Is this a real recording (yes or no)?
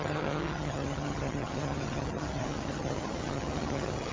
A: no